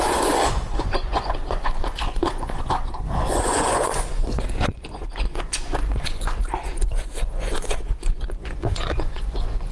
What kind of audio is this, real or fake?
fake